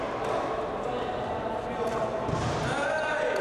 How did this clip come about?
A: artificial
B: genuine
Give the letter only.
B